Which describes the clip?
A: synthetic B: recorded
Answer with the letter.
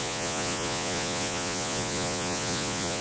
A